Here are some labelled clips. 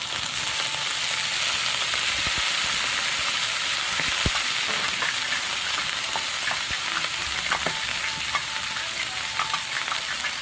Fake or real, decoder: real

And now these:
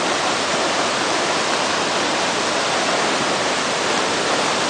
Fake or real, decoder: real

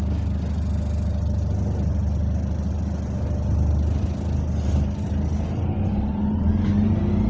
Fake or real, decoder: real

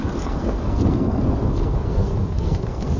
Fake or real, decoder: fake, codec, SNAC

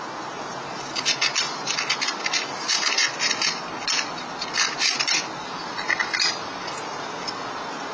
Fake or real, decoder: real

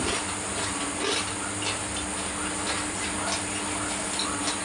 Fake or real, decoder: real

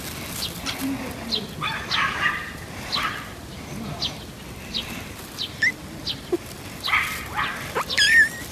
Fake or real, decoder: real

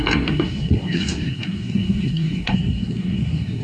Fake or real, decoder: fake, codec, SNAC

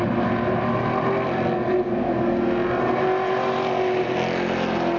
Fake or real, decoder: real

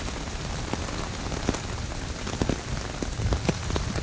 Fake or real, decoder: real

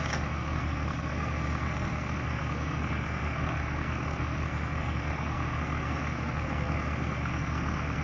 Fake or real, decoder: fake, codec, SNAC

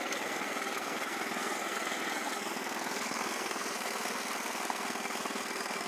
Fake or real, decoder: fake, codec, SNAC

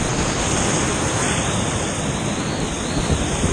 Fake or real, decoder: real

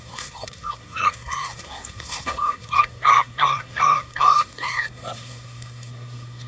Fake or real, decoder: fake, codec, SNAC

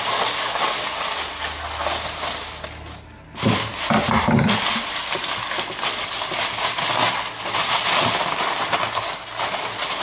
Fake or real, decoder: real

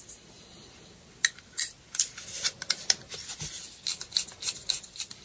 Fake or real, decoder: real